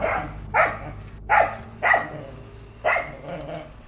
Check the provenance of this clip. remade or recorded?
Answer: recorded